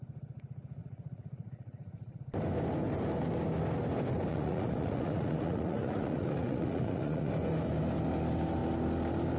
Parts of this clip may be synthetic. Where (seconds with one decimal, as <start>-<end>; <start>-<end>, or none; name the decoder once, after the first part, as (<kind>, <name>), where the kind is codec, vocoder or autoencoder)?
0.8-2.2 (vocoder, Vocos); 4.3-7.3